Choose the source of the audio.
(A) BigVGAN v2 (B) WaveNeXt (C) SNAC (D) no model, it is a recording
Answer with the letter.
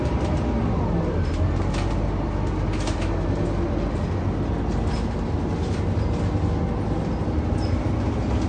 D